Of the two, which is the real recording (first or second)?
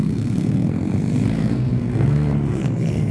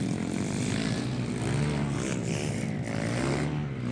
second